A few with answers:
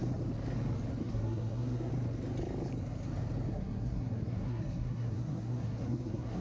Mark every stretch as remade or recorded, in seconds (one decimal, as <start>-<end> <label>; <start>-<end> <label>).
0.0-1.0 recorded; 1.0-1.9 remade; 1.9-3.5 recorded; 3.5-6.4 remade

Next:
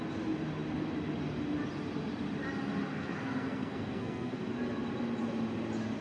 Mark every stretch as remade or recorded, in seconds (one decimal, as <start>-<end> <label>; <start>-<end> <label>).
0.0-2.9 recorded; 2.9-4.4 remade; 4.4-6.0 recorded

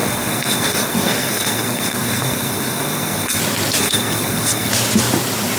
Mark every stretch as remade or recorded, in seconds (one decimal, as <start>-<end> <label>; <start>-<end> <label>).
0.0-3.4 remade; 3.4-3.8 recorded; 3.8-4.7 remade; 4.7-5.6 recorded

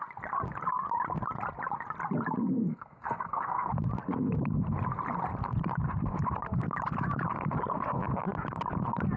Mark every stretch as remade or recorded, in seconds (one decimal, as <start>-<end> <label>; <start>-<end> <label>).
0.0-2.4 recorded; 2.4-3.7 remade; 3.7-9.2 recorded

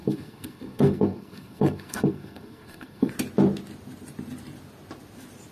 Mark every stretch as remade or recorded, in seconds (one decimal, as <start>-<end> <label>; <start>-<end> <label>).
0.0-3.1 remade; 3.1-5.5 recorded

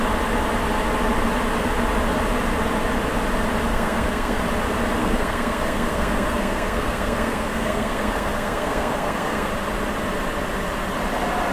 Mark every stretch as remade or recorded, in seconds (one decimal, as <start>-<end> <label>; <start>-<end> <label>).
0.0-3.7 recorded; 3.7-4.4 remade; 4.4-5.0 recorded; 5.0-9.5 remade; 9.5-11.5 recorded

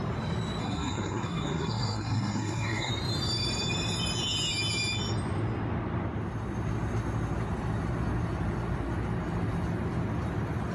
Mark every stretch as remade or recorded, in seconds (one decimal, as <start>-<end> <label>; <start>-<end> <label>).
0.0-0.6 recorded; 0.6-2.9 remade; 2.9-10.7 recorded